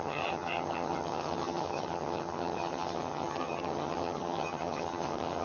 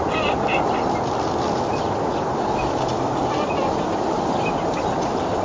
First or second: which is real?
second